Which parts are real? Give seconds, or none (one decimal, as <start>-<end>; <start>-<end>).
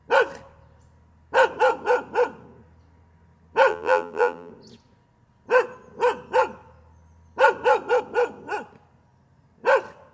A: 0.0-3.7; 4.5-10.1